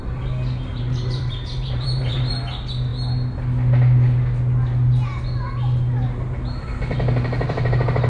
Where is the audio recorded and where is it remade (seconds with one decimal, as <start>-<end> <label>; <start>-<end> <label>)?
0.0-0.7 recorded; 0.7-2.3 remade; 2.3-8.1 recorded